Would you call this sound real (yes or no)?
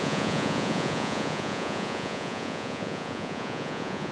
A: no